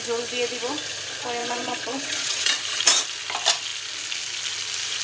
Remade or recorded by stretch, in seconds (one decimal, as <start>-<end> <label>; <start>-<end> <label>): 0.0-1.4 recorded; 1.4-2.6 remade; 2.6-5.0 recorded